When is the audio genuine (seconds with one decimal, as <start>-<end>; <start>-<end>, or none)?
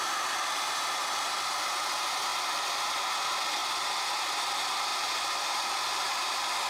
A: 0.0-2.3; 2.8-3.6; 4.1-4.9; 6.3-6.7